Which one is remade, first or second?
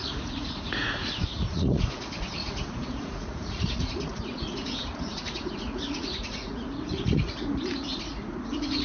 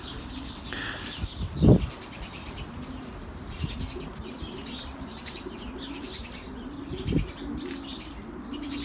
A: first